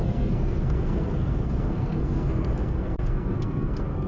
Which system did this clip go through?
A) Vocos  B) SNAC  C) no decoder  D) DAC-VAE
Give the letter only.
B